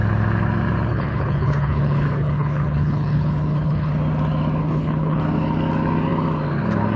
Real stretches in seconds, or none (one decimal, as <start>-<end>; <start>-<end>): 0.0-0.9; 3.9-4.6; 5.2-7.0